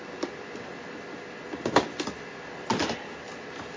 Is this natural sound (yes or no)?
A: yes